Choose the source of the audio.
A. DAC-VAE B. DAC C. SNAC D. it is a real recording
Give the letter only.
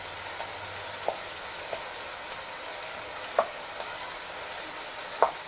D